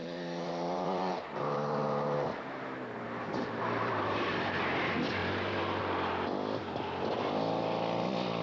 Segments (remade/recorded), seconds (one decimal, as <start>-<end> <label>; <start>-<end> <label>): 0.0-4.6 remade; 4.6-5.2 recorded; 5.2-5.8 remade; 5.8-8.4 recorded